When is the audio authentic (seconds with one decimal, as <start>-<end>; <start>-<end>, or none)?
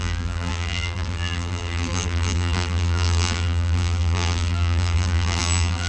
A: none